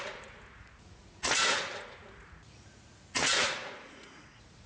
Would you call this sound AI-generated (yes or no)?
yes